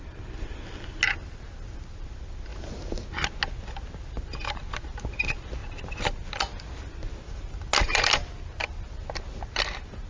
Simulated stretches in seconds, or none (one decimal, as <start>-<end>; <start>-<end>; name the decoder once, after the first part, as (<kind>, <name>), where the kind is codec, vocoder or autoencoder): none